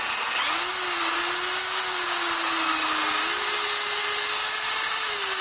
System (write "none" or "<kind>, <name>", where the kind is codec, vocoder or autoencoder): none